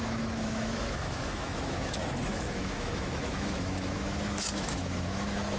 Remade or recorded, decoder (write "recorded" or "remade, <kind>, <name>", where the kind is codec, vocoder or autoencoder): remade, autoencoder, DAC-VAE